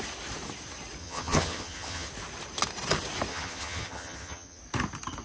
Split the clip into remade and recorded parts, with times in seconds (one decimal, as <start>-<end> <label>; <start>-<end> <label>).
0.0-1.0 recorded; 1.0-2.1 remade; 2.1-3.3 recorded; 3.3-4.6 remade; 4.6-5.2 recorded